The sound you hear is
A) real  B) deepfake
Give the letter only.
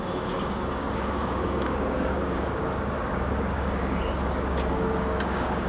B